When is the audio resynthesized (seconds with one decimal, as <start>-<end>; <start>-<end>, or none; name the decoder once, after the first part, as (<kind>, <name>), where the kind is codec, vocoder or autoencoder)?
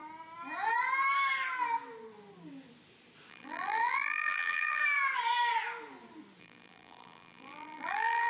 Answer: 3.3-4.8 (vocoder, BigVGAN v2); 6.4-8.3